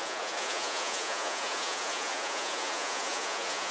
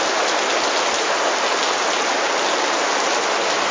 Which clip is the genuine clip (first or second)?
second